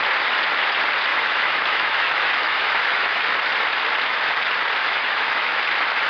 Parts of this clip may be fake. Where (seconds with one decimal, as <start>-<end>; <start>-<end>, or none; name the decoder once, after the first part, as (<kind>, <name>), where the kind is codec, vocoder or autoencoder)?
1.1-3.2 (autoencoder, DAC-VAE); 4.8-5.6